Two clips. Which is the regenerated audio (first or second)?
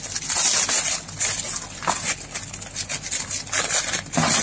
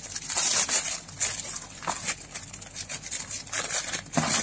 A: second